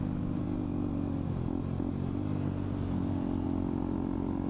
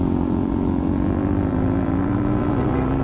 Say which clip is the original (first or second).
first